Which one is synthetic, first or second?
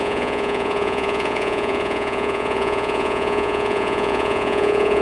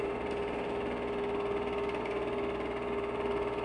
first